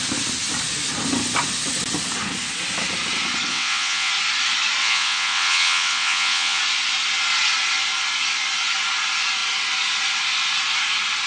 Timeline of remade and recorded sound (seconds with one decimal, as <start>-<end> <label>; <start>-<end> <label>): 0.0-3.5 recorded; 3.5-4.1 remade; 4.1-4.8 recorded; 4.8-6.6 remade; 6.6-11.3 recorded

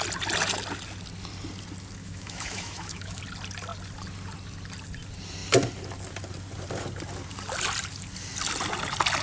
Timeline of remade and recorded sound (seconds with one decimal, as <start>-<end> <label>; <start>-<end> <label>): 0.0-2.0 recorded; 2.0-3.2 remade; 3.2-9.2 recorded

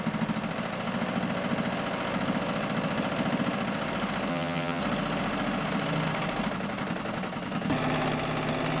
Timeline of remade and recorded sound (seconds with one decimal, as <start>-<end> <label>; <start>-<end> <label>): 0.0-4.3 recorded; 4.3-4.8 remade; 4.8-8.8 recorded

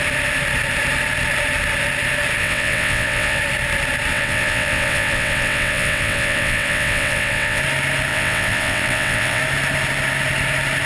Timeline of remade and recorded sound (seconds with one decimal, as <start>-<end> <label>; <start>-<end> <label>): 0.0-2.4 recorded; 2.4-3.4 remade; 3.4-4.1 recorded; 4.1-7.6 remade; 7.6-8.1 recorded; 8.1-9.4 remade; 9.4-10.9 recorded

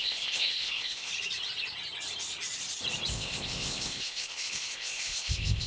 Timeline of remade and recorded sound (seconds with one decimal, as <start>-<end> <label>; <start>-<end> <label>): 0.0-1.1 remade; 1.1-3.1 recorded; 3.1-5.7 remade

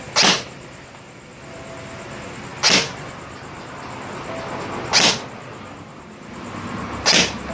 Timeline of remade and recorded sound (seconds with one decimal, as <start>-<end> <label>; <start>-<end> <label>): 0.0-7.5 recorded

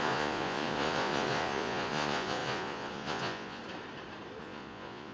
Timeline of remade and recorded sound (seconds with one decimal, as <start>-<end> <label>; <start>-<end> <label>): 0.0-3.6 remade; 3.6-4.4 recorded; 4.4-5.1 remade